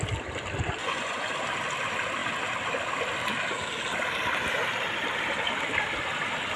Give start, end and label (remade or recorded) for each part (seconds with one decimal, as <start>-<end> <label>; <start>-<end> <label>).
0.0-0.8 recorded; 0.8-1.3 remade; 1.3-6.6 recorded